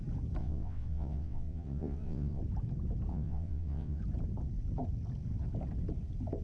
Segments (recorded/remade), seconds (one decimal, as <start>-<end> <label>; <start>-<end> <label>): 0.0-0.4 recorded; 0.4-2.4 remade; 2.4-3.1 recorded; 3.1-4.0 remade; 4.0-6.4 recorded